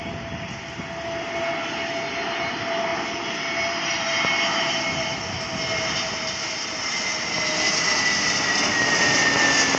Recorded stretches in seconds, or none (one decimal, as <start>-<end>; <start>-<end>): 0.0-9.8